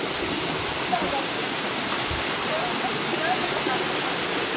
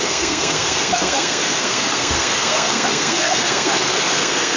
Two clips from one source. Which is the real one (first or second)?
first